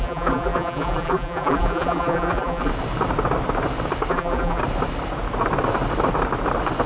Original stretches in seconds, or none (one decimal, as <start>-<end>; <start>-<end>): 2.7-4.1; 4.6-6.9